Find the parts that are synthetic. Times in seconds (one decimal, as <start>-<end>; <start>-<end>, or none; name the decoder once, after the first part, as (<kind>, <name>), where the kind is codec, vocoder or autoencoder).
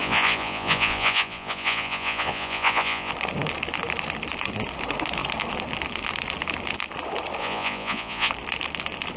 0.0-3.1 (vocoder, Vocos); 7.4-8.3